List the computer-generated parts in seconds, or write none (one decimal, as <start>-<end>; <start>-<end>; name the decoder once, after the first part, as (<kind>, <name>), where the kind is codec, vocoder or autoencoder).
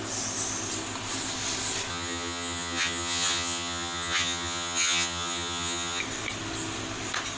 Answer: 1.9-6.0 (vocoder, HiFi-GAN)